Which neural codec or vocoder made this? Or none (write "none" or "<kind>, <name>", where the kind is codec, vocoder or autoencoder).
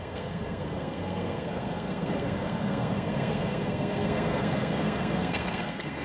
codec, SNAC